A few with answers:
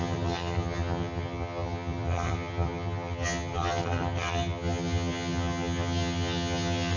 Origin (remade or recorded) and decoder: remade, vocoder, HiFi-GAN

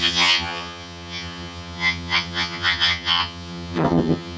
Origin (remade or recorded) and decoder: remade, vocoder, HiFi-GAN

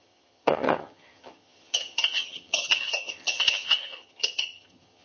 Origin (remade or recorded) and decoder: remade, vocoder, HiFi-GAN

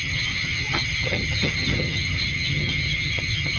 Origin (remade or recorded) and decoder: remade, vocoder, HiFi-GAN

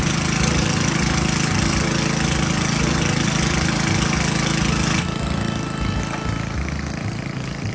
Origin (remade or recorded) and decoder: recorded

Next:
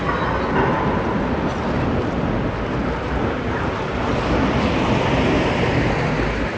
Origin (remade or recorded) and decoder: recorded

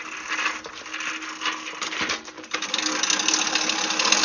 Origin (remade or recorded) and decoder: recorded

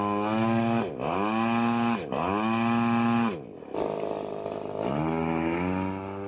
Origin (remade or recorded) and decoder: recorded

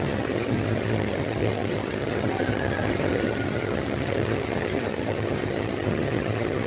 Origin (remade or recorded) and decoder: remade, vocoder, HiFi-GAN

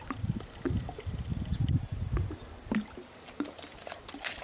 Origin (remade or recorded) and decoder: recorded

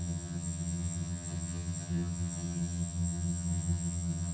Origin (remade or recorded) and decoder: remade, vocoder, HiFi-GAN